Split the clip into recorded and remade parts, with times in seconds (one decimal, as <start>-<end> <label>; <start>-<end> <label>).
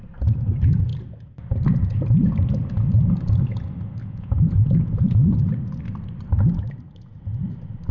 0.0-4.0 recorded; 4.0-5.0 remade; 5.0-7.9 recorded